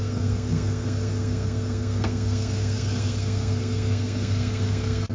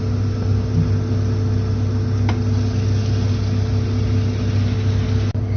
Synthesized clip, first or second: first